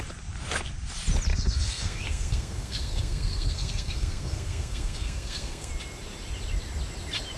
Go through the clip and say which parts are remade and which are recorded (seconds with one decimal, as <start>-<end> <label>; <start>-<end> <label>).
0.0-1.3 recorded; 1.3-5.7 remade; 5.7-7.4 recorded